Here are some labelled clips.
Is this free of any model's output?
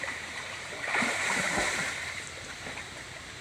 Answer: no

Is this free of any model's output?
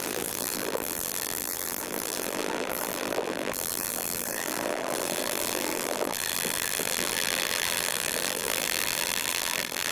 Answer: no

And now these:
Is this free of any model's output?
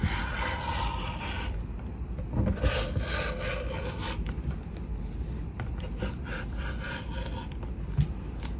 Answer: yes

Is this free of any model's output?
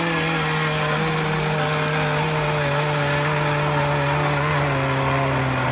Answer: yes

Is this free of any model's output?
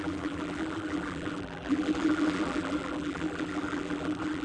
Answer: no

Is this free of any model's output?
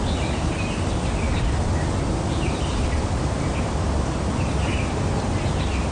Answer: yes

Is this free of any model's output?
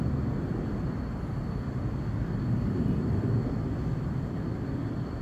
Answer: yes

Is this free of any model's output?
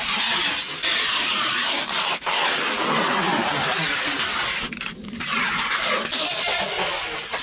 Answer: yes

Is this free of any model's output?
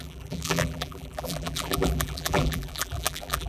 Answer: no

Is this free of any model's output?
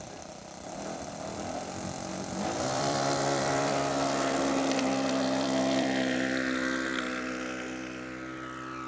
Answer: no